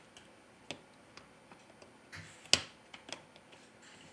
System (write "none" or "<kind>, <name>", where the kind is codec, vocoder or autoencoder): none